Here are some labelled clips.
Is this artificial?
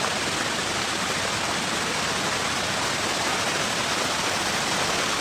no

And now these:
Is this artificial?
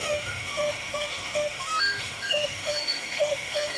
yes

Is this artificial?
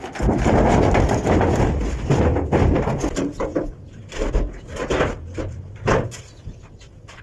no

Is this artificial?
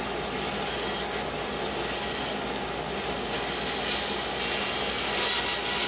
no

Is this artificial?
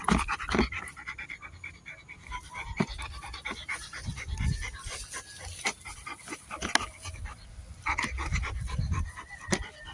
no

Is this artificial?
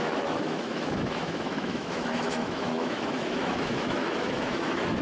yes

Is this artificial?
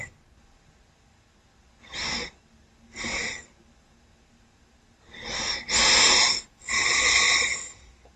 no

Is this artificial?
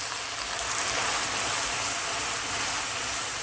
no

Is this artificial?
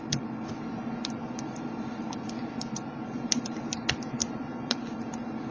yes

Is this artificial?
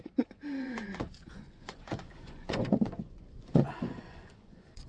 yes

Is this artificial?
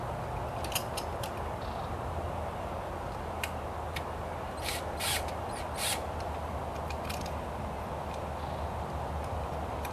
no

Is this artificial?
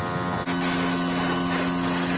no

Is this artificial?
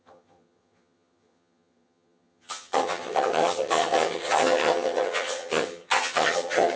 yes